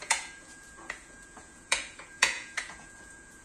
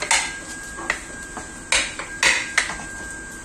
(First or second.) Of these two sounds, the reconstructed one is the first